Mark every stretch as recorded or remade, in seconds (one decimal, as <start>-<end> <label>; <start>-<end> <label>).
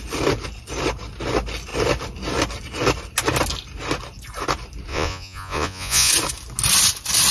0.0-4.9 recorded; 4.9-6.1 remade; 6.1-7.3 recorded